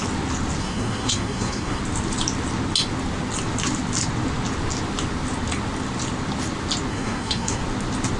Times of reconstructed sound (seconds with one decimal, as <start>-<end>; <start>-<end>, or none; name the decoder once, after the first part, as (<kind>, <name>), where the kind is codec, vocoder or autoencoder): 0.6-1.8 (codec, SNAC); 6.9-7.6